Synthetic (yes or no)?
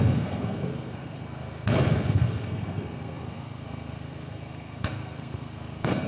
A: yes